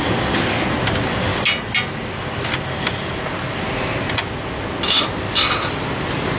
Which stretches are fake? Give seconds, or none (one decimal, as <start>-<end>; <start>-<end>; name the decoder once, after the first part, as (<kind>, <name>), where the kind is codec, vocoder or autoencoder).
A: none